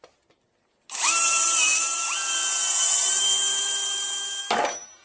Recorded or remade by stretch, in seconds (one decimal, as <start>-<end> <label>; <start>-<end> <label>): 0.0-5.0 recorded